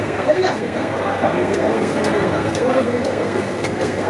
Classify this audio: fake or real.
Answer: fake